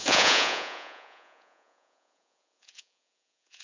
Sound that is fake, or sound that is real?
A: fake